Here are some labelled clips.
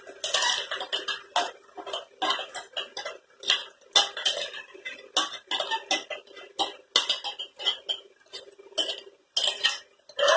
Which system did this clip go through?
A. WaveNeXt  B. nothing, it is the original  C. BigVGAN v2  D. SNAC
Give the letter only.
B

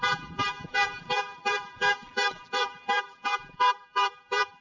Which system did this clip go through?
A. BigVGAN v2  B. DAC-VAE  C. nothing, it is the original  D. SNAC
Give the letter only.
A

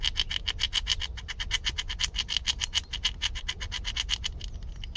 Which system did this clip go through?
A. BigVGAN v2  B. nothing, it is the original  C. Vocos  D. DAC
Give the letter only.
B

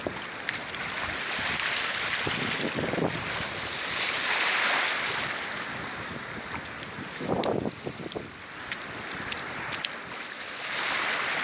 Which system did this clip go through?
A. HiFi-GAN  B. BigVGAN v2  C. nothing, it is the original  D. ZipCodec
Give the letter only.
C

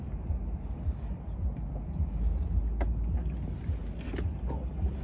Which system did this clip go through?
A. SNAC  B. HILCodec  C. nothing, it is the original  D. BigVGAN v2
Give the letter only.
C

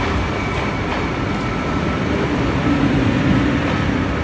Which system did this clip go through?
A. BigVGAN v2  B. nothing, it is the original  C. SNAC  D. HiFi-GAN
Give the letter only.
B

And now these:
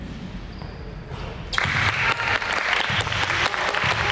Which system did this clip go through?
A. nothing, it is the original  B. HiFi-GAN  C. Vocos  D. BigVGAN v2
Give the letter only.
D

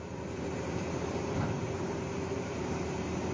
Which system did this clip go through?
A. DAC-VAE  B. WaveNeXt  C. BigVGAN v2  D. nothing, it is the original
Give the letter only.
C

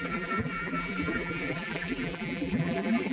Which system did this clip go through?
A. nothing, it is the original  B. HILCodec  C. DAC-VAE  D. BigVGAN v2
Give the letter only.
D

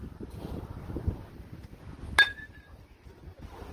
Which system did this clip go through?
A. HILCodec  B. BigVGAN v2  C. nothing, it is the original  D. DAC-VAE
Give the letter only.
C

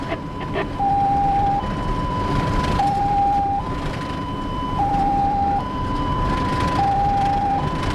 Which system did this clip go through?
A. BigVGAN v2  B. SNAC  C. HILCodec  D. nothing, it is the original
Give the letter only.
A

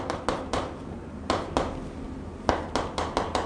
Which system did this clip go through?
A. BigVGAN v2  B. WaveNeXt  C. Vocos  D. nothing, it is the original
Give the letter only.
D